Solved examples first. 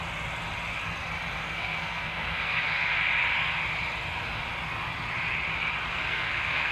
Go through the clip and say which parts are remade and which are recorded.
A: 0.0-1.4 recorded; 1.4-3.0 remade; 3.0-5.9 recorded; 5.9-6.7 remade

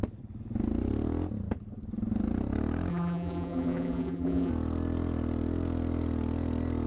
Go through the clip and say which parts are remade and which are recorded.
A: 0.0-2.9 recorded; 2.9-4.5 remade; 4.5-6.9 recorded

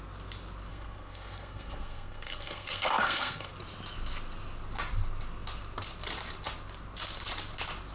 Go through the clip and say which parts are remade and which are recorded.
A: 0.0-0.7 recorded; 0.7-3.5 remade; 3.5-7.9 recorded

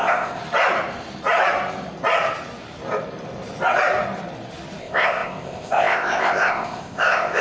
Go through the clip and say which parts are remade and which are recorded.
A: 0.0-0.4 remade; 0.4-4.8 recorded; 4.8-7.4 remade

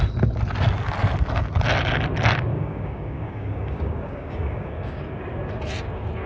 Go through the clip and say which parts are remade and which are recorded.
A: 0.0-2.5 recorded; 2.5-5.0 remade; 5.0-6.3 recorded